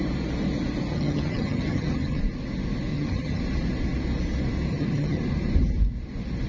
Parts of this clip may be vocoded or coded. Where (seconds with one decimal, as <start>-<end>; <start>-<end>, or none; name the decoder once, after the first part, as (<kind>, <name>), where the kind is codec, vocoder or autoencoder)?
0.9-2.2 (vocoder, HiFi-GAN); 2.9-3.4; 4.7-5.2